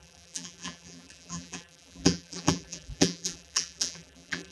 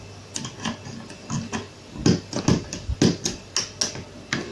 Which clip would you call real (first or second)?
second